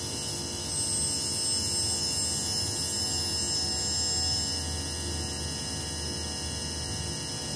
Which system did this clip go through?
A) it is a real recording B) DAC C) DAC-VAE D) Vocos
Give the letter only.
A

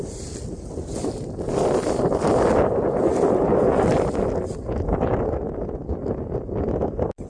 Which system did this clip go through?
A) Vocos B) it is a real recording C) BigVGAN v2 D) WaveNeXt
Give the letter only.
B